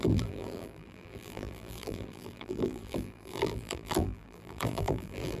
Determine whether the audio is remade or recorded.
remade